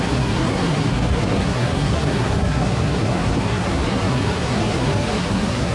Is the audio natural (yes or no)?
no